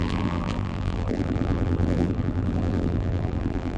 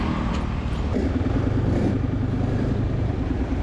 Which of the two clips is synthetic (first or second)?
first